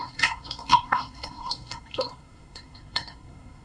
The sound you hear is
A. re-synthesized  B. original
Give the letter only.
A